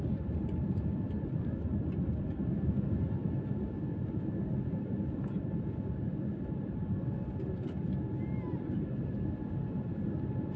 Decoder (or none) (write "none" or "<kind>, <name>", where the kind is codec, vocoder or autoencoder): none